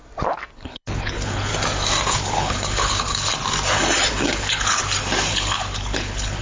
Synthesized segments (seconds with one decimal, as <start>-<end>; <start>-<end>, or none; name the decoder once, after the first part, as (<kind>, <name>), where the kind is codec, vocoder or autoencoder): 0.5-1.5 (codec, HILCodec); 2.1-3.3; 4.1-4.8; 5.3-6.4